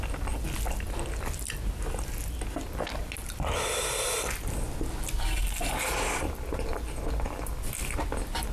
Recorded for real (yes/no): yes